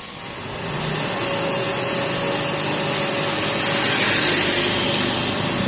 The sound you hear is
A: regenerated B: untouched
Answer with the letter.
B